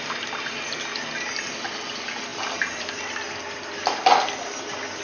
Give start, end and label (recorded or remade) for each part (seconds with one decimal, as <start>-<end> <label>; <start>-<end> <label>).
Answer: 0.0-5.0 recorded